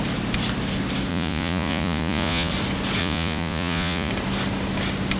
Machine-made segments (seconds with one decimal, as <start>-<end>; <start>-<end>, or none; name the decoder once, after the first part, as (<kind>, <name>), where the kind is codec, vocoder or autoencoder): 1.1-2.5 (vocoder, Vocos); 3.0-4.1